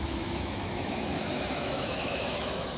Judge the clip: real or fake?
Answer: fake